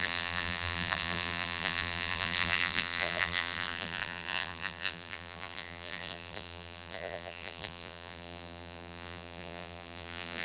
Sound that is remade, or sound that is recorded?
remade